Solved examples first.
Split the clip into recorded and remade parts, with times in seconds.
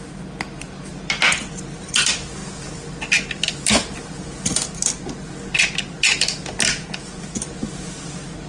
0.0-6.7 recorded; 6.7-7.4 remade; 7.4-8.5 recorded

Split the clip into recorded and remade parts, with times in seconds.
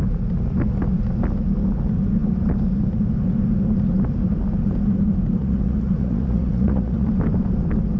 0.0-5.4 recorded; 5.4-7.1 remade; 7.1-8.0 recorded